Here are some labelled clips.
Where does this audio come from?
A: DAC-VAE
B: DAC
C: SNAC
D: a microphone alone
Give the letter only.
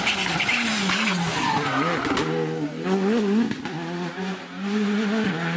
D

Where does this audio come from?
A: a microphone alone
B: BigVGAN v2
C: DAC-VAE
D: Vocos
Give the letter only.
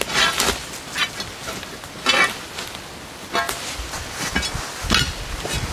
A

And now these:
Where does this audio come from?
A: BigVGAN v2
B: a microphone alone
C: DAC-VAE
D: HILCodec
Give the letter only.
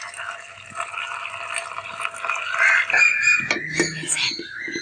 B